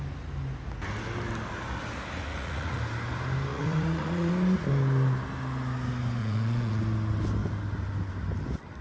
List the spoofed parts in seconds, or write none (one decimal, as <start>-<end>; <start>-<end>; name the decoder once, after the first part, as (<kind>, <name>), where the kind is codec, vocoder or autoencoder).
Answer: 2.3-2.8 (vocoder, Vocos); 3.5-4.3; 6.2-6.8